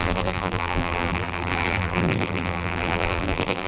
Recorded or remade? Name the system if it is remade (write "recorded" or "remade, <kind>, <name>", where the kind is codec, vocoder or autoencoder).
remade, vocoder, BigVGAN v2